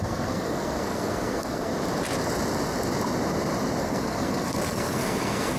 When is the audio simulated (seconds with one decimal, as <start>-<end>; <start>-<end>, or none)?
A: 0.0-1.7; 3.8-5.6